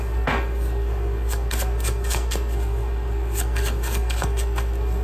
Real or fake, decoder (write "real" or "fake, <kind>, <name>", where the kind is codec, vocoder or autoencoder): fake, codec, SNAC